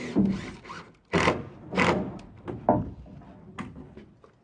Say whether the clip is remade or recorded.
recorded